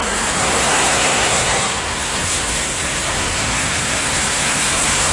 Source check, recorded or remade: remade